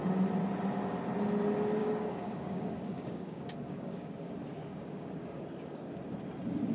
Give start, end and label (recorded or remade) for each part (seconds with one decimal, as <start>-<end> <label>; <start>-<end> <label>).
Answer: 0.0-1.8 recorded; 1.8-4.3 remade; 4.3-4.7 recorded; 4.7-6.0 remade; 6.0-6.7 recorded